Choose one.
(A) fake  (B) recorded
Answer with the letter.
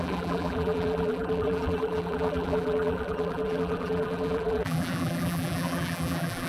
A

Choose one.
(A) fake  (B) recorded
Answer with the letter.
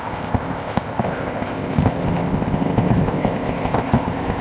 A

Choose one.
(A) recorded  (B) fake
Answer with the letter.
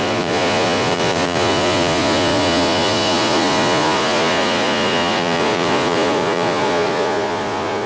B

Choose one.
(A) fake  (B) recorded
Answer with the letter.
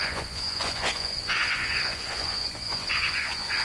A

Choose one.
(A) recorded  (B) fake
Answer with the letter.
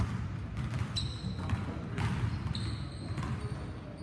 A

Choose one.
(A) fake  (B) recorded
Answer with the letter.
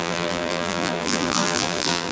A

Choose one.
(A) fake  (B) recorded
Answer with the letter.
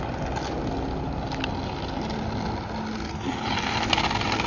B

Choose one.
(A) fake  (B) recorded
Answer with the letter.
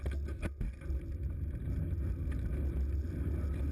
B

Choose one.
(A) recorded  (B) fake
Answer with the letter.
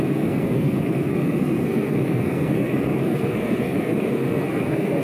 B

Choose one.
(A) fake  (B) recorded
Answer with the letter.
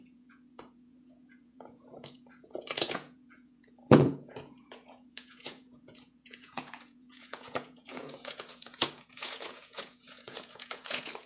A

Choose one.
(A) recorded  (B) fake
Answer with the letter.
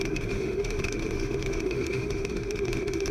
B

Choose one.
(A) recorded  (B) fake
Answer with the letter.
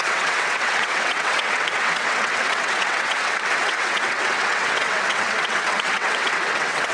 B